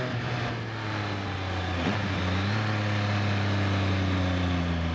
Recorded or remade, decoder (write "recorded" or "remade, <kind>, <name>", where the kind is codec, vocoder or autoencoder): recorded